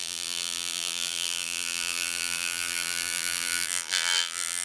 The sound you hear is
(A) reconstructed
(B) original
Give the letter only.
A